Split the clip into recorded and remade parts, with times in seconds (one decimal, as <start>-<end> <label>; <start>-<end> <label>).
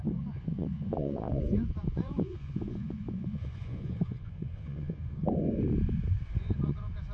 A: 0.0-5.2 remade; 5.2-6.4 recorded; 6.4-7.1 remade